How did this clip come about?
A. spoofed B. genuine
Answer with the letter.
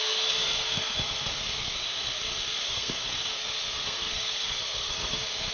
A